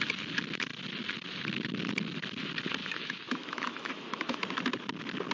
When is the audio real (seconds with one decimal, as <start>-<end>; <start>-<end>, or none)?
0.0-2.8; 4.4-5.3